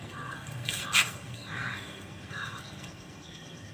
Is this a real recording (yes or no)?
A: no